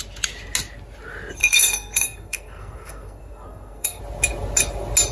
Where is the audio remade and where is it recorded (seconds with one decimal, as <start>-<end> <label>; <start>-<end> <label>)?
0.0-1.4 recorded; 1.4-4.0 remade; 4.0-5.1 recorded